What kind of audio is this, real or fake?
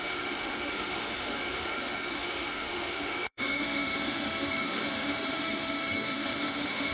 fake